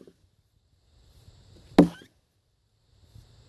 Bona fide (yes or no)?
yes